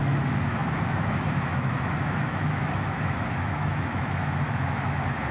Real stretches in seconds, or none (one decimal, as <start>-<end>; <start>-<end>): none